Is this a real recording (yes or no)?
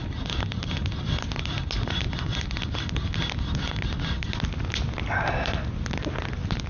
yes